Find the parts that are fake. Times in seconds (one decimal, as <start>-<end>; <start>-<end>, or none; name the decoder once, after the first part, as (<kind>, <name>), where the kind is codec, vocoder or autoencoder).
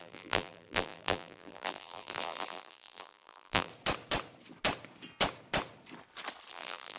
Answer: 0.0-3.7 (vocoder, BigVGAN v2); 6.5-7.0